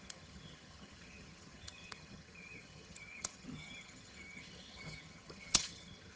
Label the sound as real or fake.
fake